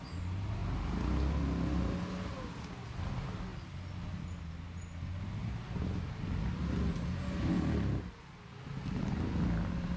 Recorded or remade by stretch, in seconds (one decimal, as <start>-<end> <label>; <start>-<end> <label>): 0.0-10.0 recorded